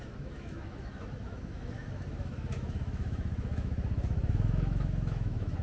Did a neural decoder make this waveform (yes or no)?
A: yes